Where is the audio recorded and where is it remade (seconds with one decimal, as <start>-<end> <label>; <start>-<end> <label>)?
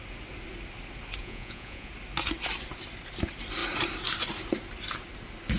0.0-1.2 recorded; 1.2-1.9 remade; 1.9-5.6 recorded